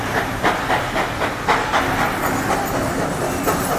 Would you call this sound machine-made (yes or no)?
no